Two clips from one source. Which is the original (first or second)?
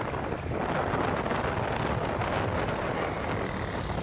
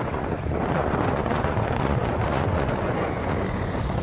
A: first